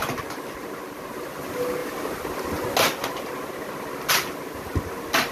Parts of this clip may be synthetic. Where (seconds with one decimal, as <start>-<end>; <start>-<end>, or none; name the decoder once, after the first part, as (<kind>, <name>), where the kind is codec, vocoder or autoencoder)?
none